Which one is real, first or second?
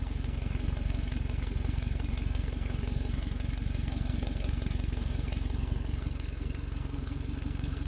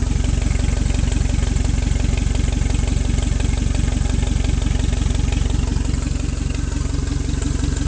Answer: second